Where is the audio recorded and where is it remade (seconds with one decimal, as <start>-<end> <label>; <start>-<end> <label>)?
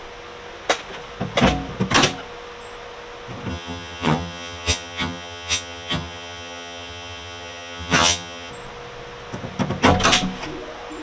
0.0-3.5 recorded; 3.5-8.5 remade; 8.5-11.0 recorded